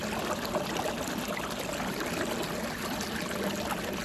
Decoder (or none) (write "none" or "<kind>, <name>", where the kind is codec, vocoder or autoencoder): none